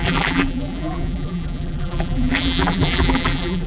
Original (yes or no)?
no